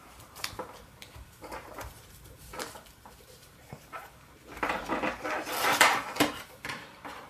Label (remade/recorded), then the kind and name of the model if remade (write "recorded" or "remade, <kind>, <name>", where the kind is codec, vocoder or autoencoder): remade, vocoder, BigVGAN v2